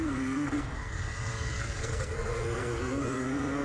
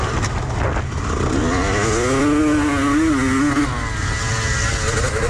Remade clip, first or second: first